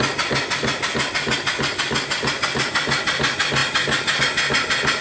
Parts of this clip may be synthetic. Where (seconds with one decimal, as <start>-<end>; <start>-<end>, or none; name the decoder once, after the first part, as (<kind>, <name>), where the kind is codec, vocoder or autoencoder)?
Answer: none